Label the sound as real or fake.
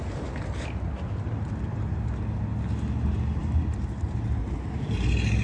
real